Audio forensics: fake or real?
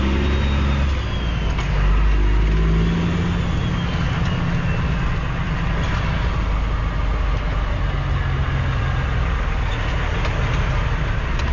real